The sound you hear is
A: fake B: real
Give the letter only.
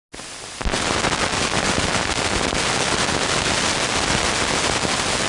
B